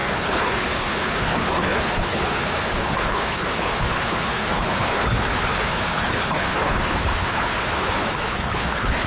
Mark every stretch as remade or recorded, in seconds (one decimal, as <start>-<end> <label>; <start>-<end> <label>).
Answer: 0.0-9.1 remade